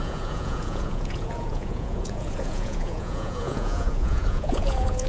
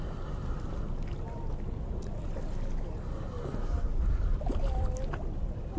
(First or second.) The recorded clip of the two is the second